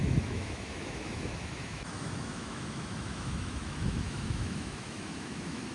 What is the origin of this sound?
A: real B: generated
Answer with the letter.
B